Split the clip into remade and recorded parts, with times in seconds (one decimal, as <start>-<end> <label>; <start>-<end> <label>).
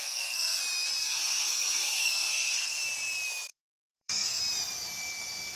0.0-0.6 remade; 0.6-1.0 recorded; 1.0-2.8 remade; 2.8-3.5 recorded; 3.5-4.4 remade; 4.4-5.6 recorded